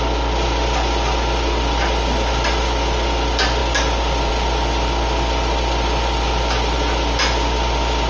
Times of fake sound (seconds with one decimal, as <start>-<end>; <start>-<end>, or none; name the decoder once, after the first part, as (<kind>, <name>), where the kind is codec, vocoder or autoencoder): none